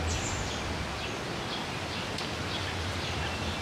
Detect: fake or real real